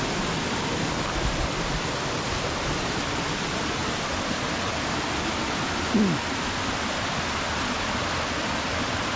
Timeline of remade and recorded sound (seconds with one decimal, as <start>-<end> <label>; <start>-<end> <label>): 0.0-9.2 recorded